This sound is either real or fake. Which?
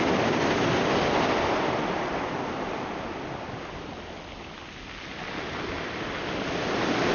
real